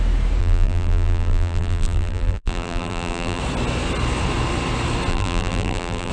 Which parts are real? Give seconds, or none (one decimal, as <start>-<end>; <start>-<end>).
0.0-0.4; 3.4-5.1